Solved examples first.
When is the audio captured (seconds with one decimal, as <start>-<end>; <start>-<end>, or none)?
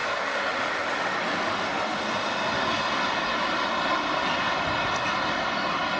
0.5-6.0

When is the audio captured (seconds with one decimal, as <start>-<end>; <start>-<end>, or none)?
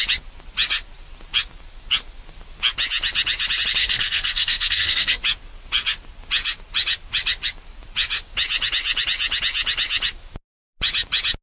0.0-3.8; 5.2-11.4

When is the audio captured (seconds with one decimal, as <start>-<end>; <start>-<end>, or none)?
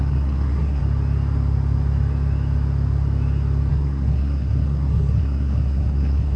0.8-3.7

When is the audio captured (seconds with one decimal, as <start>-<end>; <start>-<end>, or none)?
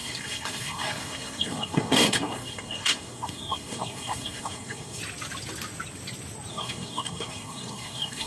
5.0-6.5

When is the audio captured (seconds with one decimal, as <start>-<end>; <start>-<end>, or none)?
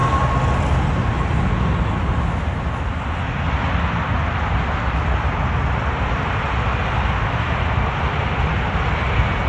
0.0-9.5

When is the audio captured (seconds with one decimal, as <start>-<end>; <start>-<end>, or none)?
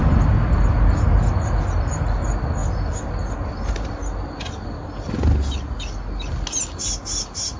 0.0-7.6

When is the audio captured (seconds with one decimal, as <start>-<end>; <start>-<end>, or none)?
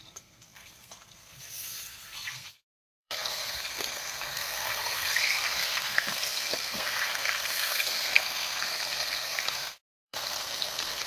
none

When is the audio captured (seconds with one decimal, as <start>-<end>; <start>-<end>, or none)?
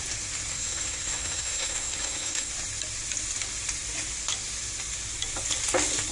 0.0-0.5; 2.5-6.1